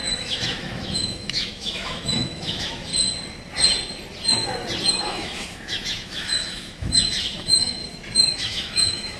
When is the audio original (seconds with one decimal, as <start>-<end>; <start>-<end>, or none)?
2.9-4.9; 7.8-8.3

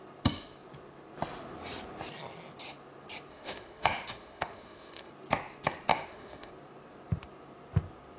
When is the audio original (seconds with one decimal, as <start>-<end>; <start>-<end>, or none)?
0.0-3.3; 5.1-5.9; 6.5-8.2

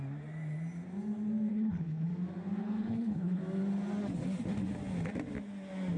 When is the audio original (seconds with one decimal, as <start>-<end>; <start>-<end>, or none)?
0.0-1.5; 2.1-2.6; 3.4-6.0

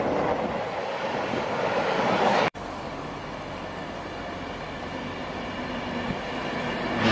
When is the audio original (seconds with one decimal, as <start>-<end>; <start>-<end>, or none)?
0.0-0.8; 3.0-7.1

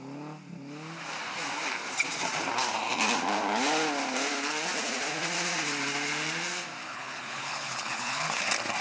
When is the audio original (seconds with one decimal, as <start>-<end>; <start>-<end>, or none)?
0.0-6.8; 8.4-8.8

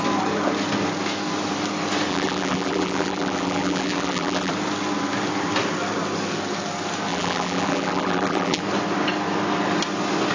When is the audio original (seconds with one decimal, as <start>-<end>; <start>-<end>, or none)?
0.0-2.1; 4.5-7.1; 8.6-10.3

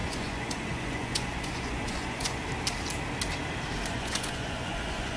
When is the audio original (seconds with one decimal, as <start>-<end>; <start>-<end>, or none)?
2.4-3.9

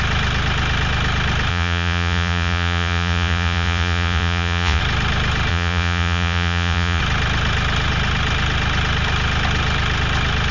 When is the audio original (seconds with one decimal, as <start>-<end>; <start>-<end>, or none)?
0.0-1.5; 4.8-5.5; 7.0-10.5